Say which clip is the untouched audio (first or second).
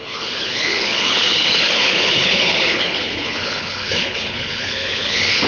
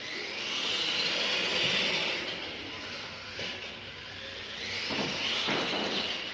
second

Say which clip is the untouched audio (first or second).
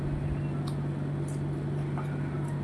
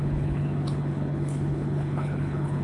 first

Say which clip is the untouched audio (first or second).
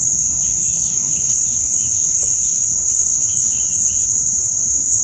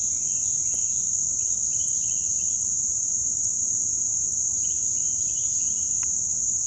second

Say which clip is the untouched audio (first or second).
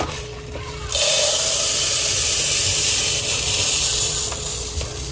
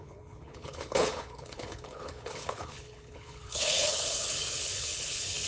first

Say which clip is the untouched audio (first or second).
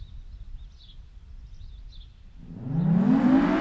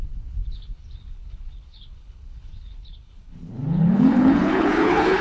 first